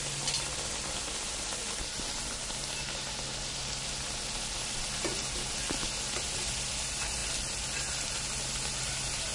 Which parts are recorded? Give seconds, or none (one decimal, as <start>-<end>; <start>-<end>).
0.0-9.3